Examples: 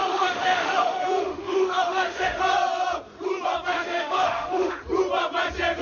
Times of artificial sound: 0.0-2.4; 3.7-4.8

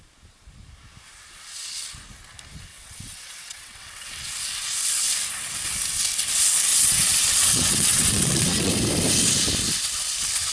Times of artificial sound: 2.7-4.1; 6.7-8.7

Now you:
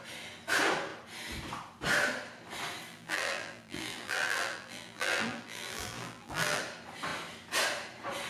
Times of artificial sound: 2.9-6.6